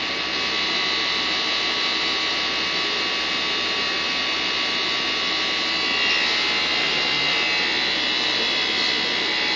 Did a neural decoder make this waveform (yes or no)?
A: no